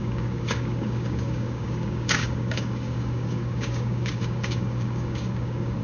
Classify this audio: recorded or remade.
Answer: remade